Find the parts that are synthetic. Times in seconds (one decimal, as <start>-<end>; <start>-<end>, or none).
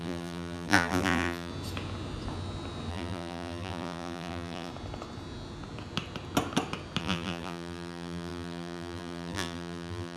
0.0-1.5; 2.9-4.7; 7.0-10.2